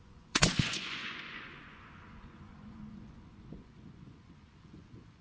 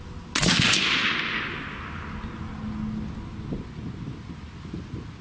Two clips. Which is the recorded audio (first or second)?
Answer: second